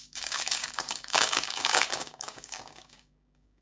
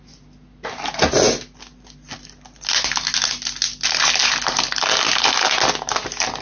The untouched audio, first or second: second